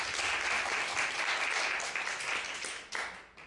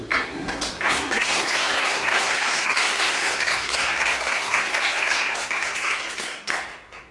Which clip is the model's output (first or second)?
second